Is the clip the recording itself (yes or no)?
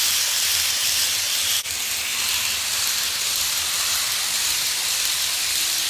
yes